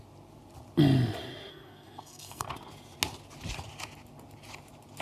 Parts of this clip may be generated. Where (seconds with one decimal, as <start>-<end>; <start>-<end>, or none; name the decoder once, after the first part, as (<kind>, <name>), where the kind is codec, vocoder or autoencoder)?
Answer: 1.5-2.5 (codec, SNAC)